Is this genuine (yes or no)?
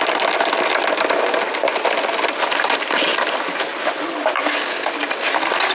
yes